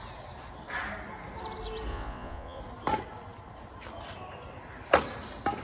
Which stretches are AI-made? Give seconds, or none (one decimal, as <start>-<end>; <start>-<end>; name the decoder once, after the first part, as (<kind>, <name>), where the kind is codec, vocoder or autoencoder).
1.9-2.6 (vocoder, Vocos)